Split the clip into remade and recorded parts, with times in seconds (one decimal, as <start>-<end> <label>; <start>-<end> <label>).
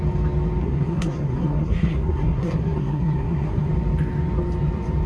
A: 0.0-0.6 recorded; 0.6-3.7 remade; 3.7-5.1 recorded